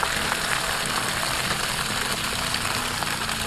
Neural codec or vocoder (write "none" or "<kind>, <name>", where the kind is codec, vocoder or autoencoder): none